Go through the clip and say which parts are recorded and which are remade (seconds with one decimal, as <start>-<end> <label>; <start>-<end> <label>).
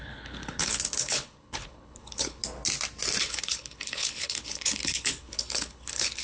0.0-2.4 remade; 2.4-3.2 recorded; 3.2-6.2 remade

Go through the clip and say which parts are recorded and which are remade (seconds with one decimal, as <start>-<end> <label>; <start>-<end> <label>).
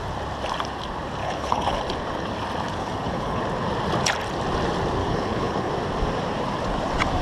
0.0-1.2 recorded; 1.2-1.8 remade; 1.8-2.8 recorded; 2.8-3.4 remade; 3.4-5.0 recorded; 5.0-5.7 remade; 5.7-7.2 recorded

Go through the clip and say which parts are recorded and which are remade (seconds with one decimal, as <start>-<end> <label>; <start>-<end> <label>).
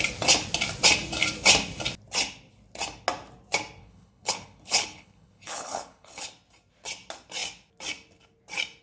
0.0-3.8 recorded; 3.8-6.3 remade; 6.3-8.8 recorded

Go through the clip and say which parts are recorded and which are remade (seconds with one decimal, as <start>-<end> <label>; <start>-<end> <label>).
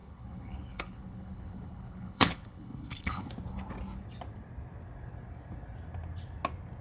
0.0-3.3 remade; 3.3-6.8 recorded